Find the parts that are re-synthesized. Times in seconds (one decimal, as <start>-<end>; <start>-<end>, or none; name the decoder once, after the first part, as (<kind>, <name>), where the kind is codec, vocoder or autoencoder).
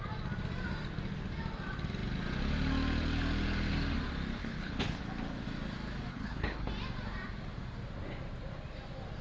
4.4-5.0 (codec, HILCodec); 6.1-6.7